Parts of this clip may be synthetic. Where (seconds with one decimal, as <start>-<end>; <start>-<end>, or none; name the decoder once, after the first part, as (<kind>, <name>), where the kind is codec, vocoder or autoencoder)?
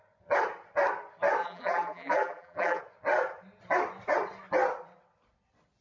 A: 1.4-2.8 (vocoder, BigVGAN v2)